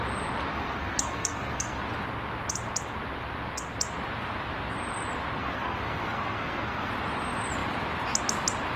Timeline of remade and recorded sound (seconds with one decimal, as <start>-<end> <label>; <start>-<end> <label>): 0.0-0.5 recorded; 0.5-1.8 remade; 1.8-5.4 recorded; 5.4-6.9 remade; 6.9-8.8 recorded

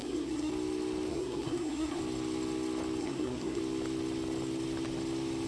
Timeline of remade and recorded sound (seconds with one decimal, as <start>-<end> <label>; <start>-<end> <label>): 0.0-0.5 remade; 0.5-1.1 recorded; 1.1-2.0 remade; 2.0-3.0 recorded; 3.0-3.6 remade; 3.6-5.5 recorded

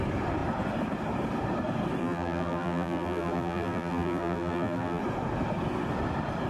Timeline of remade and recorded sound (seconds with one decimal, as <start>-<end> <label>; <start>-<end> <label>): 0.0-2.0 recorded; 2.0-5.0 remade; 5.0-6.5 recorded

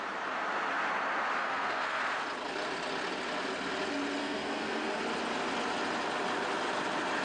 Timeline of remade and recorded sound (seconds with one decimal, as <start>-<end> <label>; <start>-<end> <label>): 0.0-1.4 recorded; 1.4-2.0 remade; 2.0-4.2 recorded; 4.2-5.0 remade; 5.0-7.2 recorded